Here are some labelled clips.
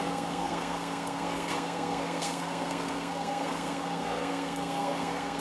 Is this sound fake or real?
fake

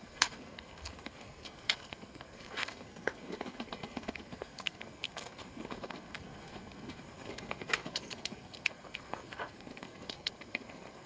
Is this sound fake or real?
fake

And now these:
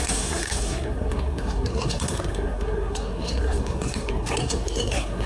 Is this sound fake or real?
fake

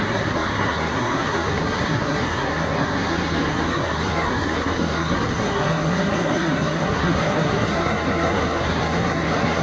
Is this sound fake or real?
fake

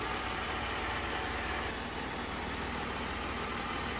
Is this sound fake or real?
real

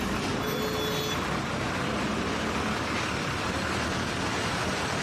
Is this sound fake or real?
real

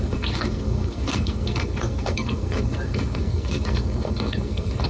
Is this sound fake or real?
fake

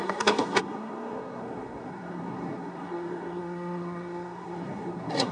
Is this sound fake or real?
fake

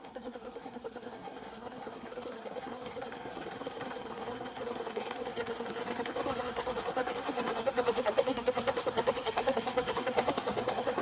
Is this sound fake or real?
fake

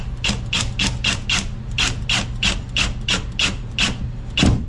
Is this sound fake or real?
real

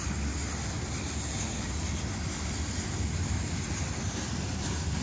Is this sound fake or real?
real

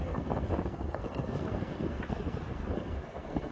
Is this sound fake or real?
fake